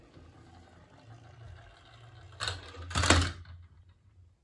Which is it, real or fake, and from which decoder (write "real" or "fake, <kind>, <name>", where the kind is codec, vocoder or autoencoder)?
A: real